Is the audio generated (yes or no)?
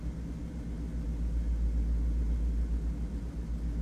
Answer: no